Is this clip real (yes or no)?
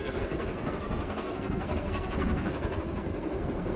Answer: no